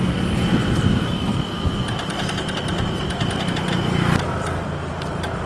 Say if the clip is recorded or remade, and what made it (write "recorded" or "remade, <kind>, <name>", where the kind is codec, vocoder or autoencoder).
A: recorded